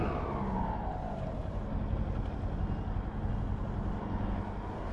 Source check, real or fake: real